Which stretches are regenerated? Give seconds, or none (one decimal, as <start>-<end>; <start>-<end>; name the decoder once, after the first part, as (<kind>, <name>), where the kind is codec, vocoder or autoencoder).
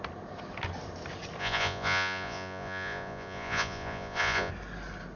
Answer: 1.4-4.5 (vocoder, Vocos)